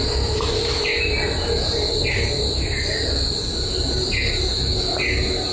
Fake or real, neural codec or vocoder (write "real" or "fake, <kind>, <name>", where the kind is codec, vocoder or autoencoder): real